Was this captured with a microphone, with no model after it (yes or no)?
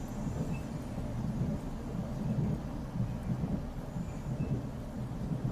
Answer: yes